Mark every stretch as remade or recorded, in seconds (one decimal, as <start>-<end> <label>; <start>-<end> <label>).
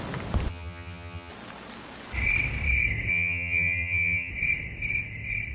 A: 0.0-0.5 recorded; 0.5-1.3 remade; 1.3-3.1 recorded; 3.1-4.3 remade; 4.3-5.5 recorded